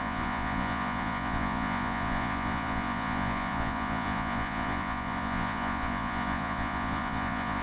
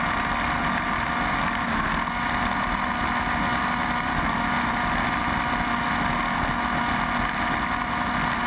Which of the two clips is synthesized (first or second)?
first